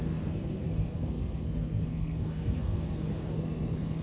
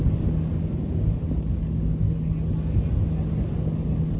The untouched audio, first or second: second